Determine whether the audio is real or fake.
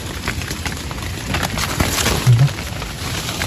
real